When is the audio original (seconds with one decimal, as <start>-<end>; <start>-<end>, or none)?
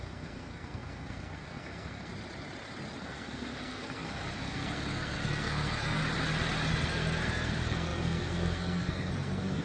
2.1-3.0; 6.0-6.7